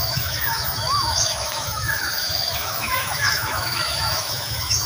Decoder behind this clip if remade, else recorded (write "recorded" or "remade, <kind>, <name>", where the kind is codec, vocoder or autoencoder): remade, autoencoder, DAC-VAE